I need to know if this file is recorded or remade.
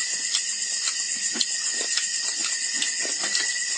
recorded